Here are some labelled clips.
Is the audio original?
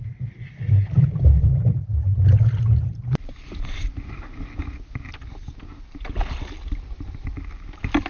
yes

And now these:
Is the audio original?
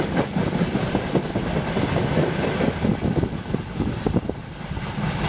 yes